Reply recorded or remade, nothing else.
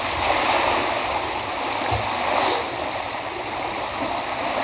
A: recorded